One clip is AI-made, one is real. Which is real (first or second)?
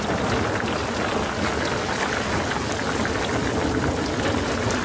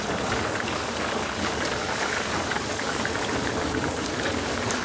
first